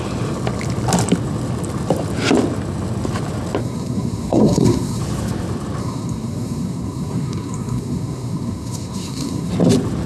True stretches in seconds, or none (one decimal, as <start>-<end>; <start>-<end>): 0.0-3.6; 5.0-5.8; 9.5-10.1